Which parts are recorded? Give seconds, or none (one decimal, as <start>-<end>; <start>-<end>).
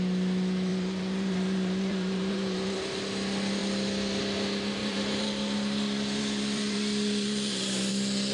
0.0-0.7; 3.0-4.8; 7.9-8.3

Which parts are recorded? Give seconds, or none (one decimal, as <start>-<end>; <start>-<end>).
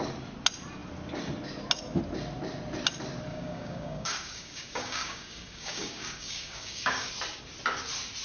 0.0-3.3; 7.1-8.2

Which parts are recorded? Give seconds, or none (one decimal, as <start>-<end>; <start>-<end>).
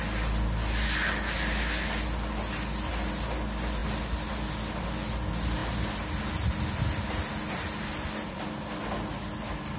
0.0-9.8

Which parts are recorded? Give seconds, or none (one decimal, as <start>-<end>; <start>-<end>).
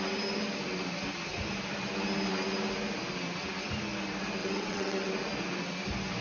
0.0-4.4; 5.1-6.2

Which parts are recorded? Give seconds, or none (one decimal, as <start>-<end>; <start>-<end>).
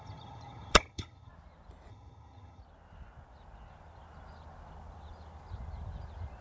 1.3-1.9; 2.6-6.4